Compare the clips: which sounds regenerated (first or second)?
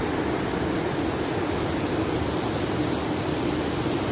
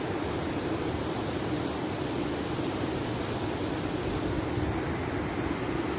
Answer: second